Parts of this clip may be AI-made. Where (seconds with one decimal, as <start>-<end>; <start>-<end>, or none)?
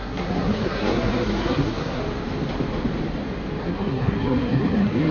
0.0-2.0; 3.6-5.1